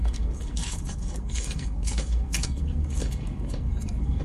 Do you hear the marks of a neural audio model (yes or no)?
yes